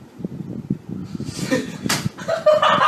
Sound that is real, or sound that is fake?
real